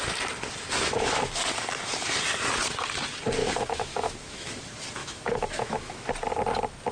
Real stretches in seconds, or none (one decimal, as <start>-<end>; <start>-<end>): 0.0-3.4; 4.6-5.0; 6.1-6.9